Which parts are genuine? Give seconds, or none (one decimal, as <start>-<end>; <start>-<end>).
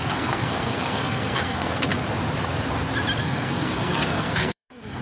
1.9-3.2